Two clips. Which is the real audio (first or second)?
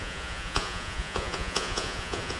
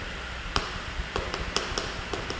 second